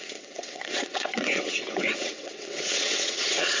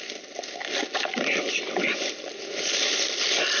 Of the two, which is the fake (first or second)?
first